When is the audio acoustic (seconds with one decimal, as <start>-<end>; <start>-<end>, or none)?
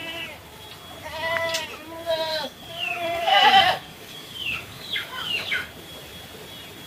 0.0-2.3; 5.7-6.9